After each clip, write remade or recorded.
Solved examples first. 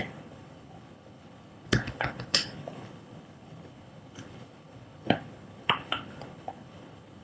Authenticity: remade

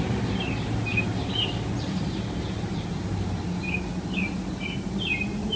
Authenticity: recorded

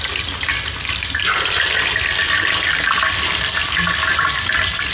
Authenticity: recorded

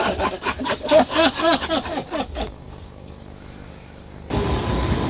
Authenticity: remade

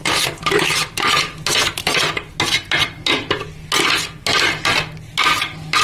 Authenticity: recorded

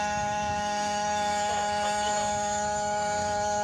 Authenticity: remade